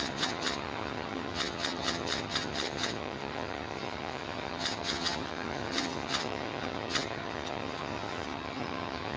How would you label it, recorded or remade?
remade